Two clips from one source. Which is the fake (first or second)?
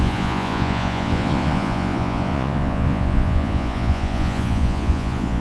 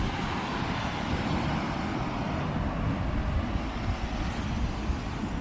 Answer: first